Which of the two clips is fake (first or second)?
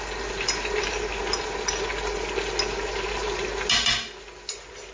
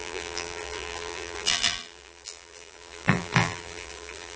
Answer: second